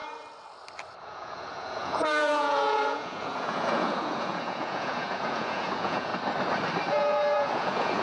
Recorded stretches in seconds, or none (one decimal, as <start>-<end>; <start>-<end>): 0.0-1.0; 6.1-6.9